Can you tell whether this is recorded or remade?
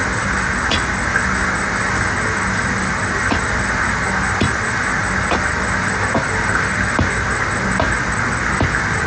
recorded